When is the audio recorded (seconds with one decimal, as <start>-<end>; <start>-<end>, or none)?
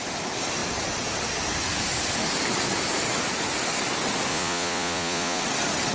0.0-4.3; 5.4-5.9